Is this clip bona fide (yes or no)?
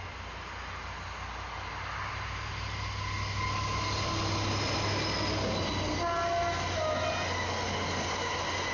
yes